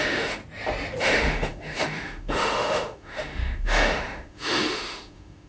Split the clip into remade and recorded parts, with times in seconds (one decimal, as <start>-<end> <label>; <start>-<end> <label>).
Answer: 0.0-0.4 remade; 0.4-1.0 recorded; 1.0-5.5 remade